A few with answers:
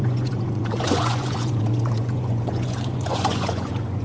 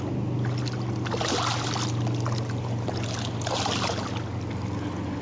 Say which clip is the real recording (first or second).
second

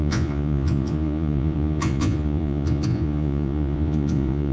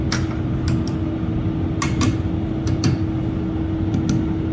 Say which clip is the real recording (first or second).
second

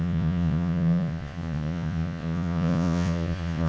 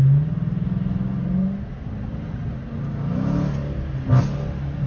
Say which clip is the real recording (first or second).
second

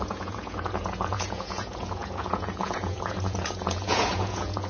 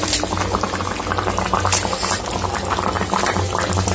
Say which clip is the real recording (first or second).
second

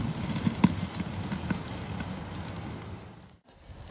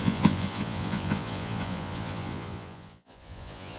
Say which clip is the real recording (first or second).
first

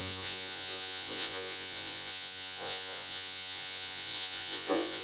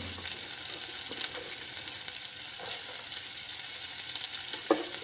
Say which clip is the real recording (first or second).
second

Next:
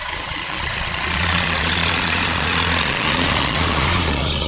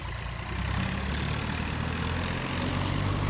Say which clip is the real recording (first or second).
second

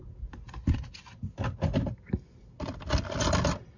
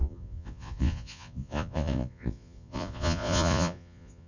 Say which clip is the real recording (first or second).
first